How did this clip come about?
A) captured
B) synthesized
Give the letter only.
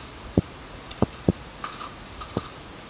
B